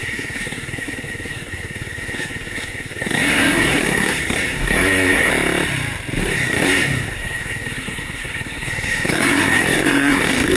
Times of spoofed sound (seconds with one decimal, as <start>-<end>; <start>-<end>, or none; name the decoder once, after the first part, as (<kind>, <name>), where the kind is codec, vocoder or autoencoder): 0.0-5.3 (codec, SNAC); 6.2-10.6